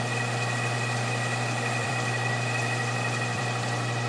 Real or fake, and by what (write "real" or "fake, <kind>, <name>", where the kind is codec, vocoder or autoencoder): fake, vocoder, BigVGAN v2